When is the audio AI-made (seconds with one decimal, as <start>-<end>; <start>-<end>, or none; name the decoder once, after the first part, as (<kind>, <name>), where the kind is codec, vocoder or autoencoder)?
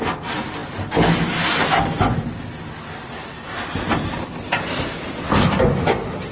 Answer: none